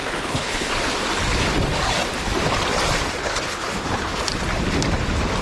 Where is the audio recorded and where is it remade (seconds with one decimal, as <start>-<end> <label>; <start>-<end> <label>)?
0.0-0.7 remade; 0.7-3.2 recorded; 3.2-4.2 remade; 4.2-5.4 recorded

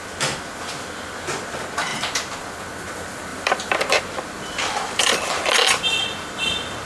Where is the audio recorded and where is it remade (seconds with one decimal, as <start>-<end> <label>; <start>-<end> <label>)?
0.0-1.9 recorded; 1.9-2.6 remade; 2.6-3.3 recorded; 3.3-6.5 remade; 6.5-6.9 recorded

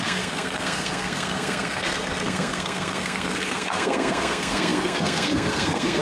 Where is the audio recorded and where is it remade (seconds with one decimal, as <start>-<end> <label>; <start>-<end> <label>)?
0.0-6.0 remade

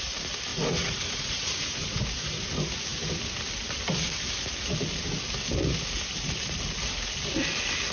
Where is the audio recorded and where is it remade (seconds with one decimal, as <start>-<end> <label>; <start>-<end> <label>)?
0.0-0.5 recorded; 0.5-2.0 remade; 2.0-7.9 recorded

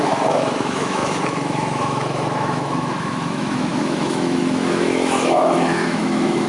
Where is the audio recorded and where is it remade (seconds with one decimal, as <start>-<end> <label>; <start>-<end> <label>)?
0.0-6.5 remade

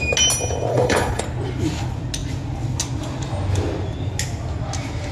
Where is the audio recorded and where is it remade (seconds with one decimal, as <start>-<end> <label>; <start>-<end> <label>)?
0.0-0.7 recorded; 0.7-1.2 remade; 1.2-5.1 recorded

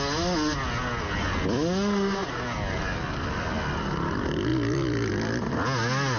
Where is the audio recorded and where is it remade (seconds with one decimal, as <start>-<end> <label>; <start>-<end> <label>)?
0.0-4.5 recorded; 4.5-5.1 remade; 5.1-6.2 recorded